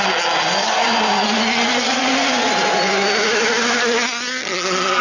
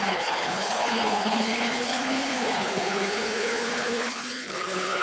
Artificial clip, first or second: second